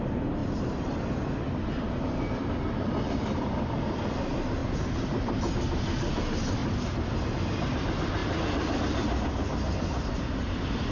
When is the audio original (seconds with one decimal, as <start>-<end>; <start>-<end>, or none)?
0.0-10.9

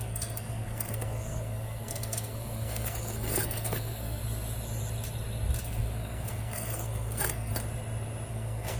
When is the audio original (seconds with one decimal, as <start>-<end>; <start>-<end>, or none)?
4.2-5.6; 7.5-8.3

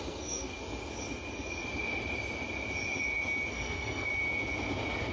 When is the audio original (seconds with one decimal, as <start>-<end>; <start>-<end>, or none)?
0.6-3.5; 4.1-5.1

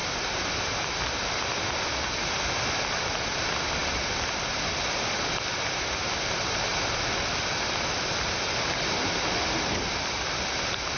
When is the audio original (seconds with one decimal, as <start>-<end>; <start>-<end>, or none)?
0.0-11.0

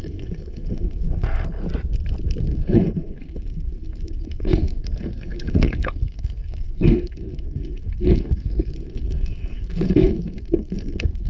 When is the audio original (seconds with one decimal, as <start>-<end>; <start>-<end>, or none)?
1.6-2.4

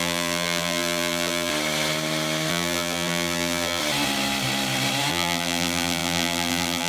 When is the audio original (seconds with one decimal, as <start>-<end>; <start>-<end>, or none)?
1.5-2.5; 3.8-5.1

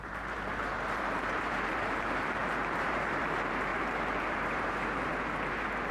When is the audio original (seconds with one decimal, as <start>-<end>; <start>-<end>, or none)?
3.7-4.2; 5.1-5.9